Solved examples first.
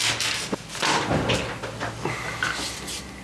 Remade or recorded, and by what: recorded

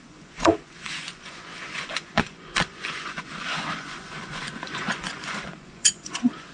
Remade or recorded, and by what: remade, vocoder, Vocos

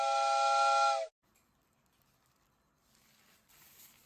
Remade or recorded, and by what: recorded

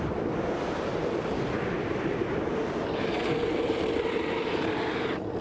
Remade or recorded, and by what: recorded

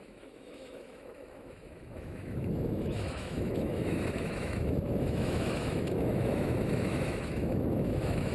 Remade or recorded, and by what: remade, autoencoder, DAC-VAE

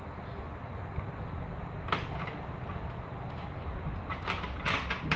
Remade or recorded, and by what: recorded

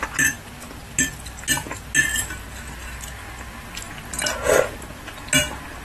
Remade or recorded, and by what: recorded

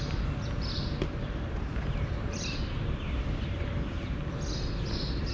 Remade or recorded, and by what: recorded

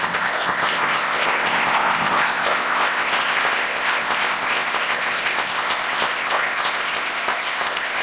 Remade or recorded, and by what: remade, codec, ZipCodec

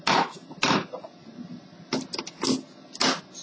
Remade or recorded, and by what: recorded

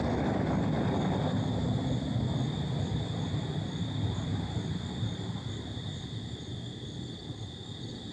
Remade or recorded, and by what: recorded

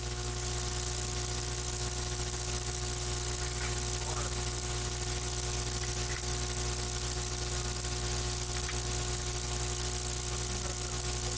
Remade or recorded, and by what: recorded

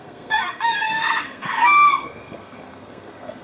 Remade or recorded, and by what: remade, codec, SNAC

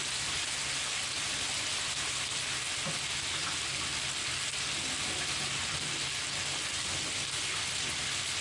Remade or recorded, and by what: recorded